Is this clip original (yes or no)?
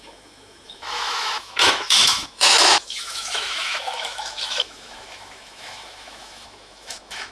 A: no